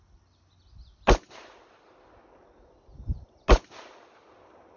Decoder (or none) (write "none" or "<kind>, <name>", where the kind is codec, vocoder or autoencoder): none